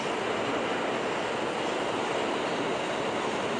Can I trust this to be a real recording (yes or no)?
yes